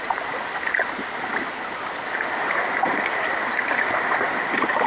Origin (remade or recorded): recorded